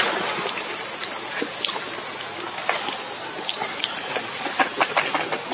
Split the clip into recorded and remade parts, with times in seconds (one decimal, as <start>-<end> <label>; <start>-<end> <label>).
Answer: 0.0-1.0 remade; 1.0-4.3 recorded; 4.3-5.5 remade